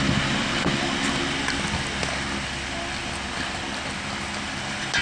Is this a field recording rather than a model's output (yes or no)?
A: yes